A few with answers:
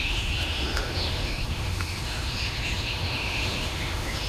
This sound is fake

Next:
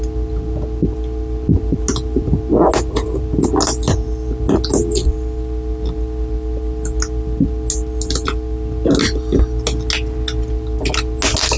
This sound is real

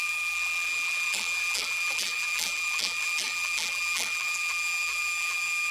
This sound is fake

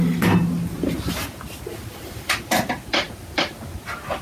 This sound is real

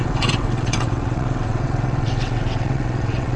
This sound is fake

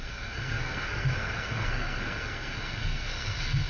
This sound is fake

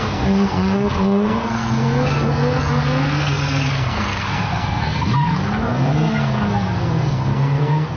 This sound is fake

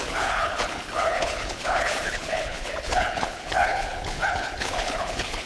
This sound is fake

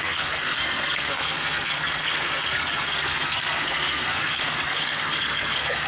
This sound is fake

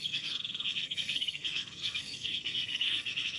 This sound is fake